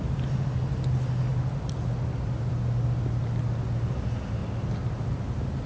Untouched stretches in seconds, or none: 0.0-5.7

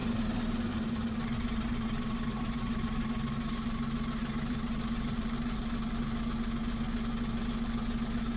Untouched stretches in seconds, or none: 3.1-4.2; 5.6-8.4

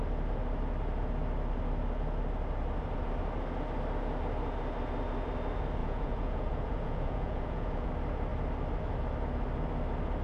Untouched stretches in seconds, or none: 0.0-5.8; 7.9-10.2